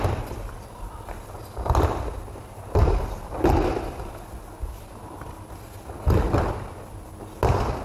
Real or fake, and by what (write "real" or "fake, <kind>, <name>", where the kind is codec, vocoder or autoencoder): real